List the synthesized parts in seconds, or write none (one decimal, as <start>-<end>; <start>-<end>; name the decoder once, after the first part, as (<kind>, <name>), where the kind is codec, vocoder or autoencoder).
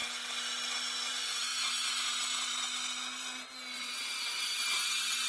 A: 1.1-1.5 (vocoder, BigVGAN v2); 4.7-5.3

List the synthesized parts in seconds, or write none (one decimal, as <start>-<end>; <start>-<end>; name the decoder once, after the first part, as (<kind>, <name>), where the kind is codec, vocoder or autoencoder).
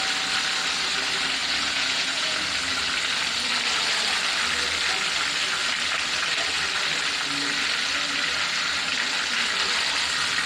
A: 1.4-2.4 (vocoder, Vocos)